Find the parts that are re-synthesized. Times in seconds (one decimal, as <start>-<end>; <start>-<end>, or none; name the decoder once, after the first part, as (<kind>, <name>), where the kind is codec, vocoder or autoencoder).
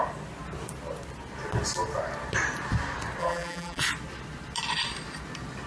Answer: 3.2-3.8 (vocoder, BigVGAN v2)